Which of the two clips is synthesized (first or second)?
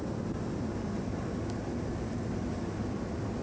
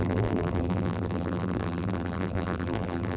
second